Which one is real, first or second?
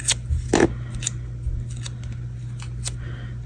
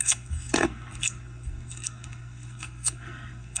first